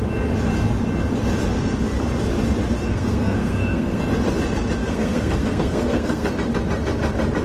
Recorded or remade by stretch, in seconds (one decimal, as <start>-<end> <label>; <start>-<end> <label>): 0.0-2.9 recorded; 2.9-4.0 remade; 4.0-4.8 recorded; 4.8-6.3 remade; 6.3-7.4 recorded